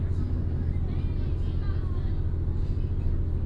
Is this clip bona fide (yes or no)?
yes